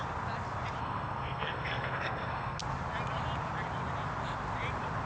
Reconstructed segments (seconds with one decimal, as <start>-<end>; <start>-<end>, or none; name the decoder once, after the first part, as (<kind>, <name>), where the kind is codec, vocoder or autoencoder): 0.8-2.6 (codec, SNAC)